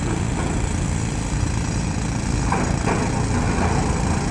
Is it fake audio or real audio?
real